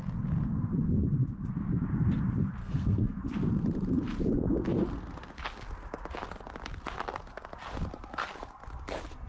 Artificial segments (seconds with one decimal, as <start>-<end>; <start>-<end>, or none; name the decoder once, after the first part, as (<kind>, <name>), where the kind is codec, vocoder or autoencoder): 2.6-3.2 (codec, SNAC)